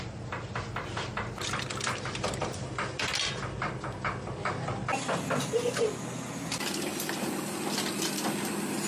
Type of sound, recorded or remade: recorded